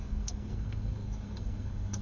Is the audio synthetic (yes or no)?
yes